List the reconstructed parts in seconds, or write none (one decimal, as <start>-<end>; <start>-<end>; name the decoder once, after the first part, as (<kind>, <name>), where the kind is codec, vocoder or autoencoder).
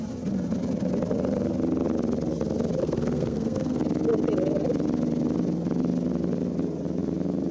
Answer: 2.8-3.8 (codec, SNAC)